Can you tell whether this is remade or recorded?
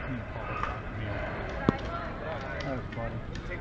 recorded